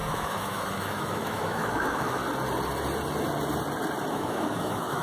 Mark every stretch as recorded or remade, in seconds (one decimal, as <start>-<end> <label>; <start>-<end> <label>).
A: 0.0-2.2 remade; 2.2-4.1 recorded; 4.1-5.0 remade